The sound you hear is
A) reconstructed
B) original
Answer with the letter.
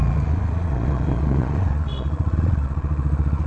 A